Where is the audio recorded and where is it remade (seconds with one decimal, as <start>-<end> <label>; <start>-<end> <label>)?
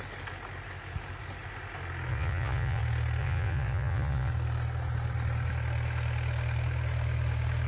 0.0-2.1 recorded; 2.1-2.8 remade; 2.8-3.2 recorded; 3.2-4.3 remade; 4.3-7.7 recorded